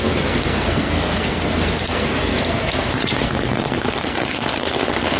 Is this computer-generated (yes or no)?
yes